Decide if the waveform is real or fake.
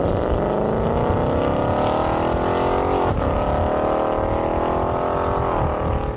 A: real